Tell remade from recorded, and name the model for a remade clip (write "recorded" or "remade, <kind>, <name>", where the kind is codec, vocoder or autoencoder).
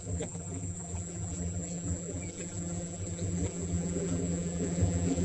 remade, vocoder, BigVGAN v2